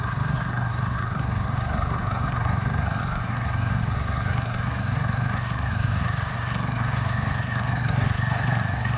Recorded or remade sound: remade